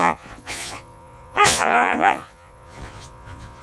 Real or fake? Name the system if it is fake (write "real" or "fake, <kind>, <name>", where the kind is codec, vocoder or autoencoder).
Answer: fake, vocoder, Vocos